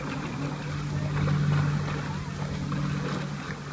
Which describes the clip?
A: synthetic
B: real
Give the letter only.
B